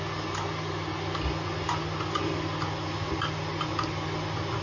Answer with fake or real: real